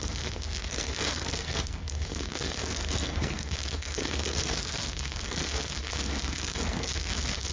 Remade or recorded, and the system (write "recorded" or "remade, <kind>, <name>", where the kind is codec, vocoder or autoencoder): remade, codec, SNAC